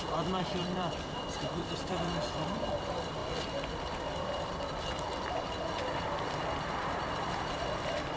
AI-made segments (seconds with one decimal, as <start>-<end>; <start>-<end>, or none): 0.0-3.2; 3.8-8.2